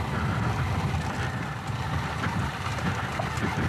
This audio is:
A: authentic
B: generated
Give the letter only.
A